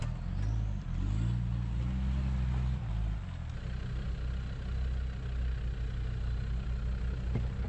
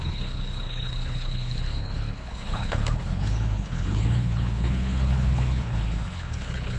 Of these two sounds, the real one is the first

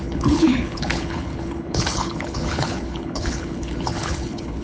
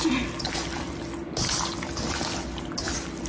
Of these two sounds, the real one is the second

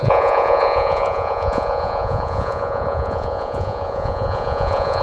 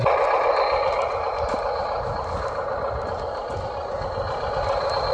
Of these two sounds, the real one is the second